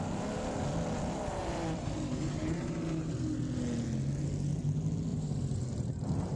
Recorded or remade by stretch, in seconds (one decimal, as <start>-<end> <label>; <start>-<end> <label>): 0.0-1.4 recorded; 1.4-3.1 remade; 3.1-5.1 recorded; 5.1-6.4 remade